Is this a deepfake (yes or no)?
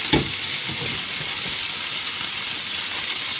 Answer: no